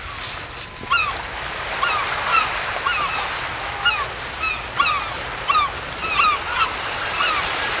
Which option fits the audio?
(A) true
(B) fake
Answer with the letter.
A